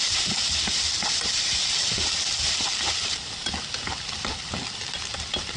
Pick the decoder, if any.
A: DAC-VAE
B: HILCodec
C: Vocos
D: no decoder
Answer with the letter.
D